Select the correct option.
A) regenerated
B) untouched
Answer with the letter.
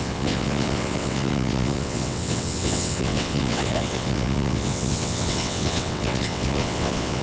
A